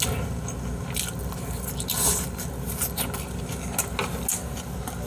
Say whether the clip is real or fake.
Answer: real